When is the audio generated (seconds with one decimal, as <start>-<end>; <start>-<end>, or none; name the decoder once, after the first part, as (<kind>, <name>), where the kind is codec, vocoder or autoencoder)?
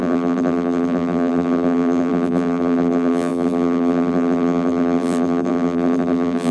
0.0-6.5 (vocoder, BigVGAN v2)